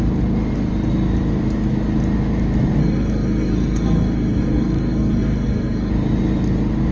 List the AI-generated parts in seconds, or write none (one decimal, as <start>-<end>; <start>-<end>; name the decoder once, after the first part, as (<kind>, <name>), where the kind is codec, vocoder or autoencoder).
2.8-5.9 (codec, SNAC)